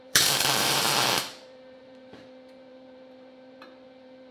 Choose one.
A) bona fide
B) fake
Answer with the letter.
B